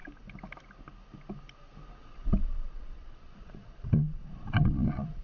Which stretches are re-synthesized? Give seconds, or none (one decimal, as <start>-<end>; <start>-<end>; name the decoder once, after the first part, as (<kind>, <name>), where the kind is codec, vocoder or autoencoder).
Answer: 2.0-5.2 (vocoder, Vocos)